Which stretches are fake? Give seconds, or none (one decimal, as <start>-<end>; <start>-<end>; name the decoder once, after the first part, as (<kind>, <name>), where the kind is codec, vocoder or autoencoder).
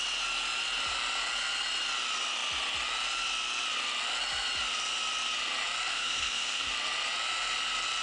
5.9-6.7 (codec, SNAC)